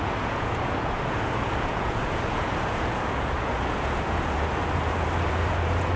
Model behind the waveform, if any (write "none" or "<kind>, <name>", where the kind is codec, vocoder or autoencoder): vocoder, Vocos